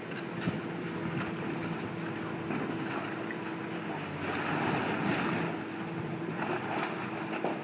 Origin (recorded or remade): recorded